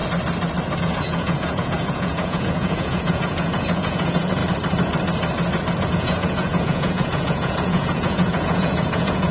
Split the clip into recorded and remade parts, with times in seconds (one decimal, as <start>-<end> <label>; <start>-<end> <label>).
0.0-0.8 recorded; 0.8-4.4 remade; 4.4-5.9 recorded; 5.9-9.3 remade